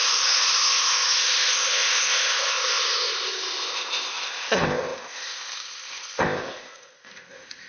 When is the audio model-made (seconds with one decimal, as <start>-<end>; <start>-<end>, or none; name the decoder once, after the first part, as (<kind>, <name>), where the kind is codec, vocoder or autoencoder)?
0.0-7.7 (codec, ZipCodec)